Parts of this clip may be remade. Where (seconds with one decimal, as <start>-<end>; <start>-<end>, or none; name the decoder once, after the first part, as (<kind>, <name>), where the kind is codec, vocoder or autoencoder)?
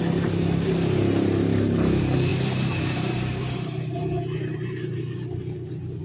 none